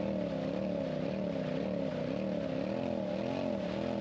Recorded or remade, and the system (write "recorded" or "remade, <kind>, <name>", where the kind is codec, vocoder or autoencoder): recorded